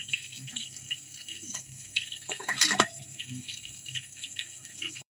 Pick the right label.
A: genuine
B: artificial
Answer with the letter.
B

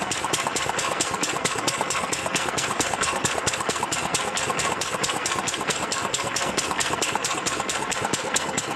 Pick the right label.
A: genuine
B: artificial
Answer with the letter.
B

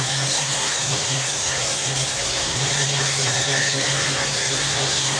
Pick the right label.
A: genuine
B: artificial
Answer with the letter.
B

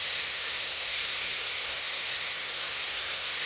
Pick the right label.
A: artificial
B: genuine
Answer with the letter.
A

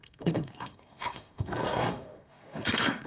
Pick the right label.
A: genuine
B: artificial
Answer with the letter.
B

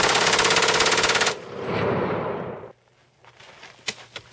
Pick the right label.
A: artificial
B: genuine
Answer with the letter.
B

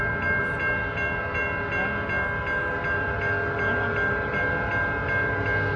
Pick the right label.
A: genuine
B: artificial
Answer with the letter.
A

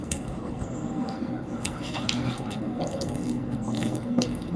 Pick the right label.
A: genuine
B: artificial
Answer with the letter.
B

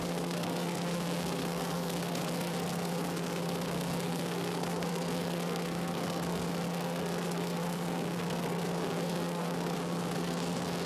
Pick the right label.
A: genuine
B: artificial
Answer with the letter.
B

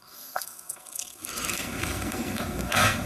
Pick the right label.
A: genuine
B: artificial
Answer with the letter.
B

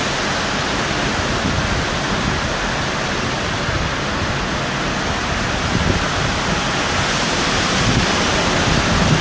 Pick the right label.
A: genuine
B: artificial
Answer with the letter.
A